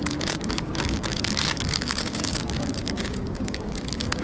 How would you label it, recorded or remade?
remade